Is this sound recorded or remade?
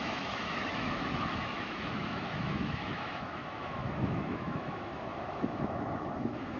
remade